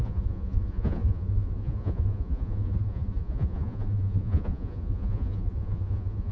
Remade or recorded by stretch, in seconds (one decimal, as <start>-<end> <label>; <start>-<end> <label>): 0.0-6.3 remade